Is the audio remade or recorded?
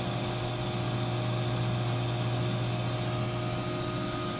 recorded